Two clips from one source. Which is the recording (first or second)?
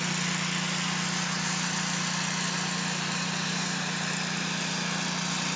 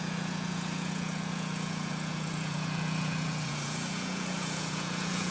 first